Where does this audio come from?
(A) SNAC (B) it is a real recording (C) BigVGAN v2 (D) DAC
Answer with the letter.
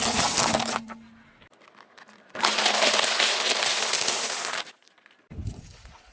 B